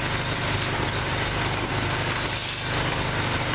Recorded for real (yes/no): yes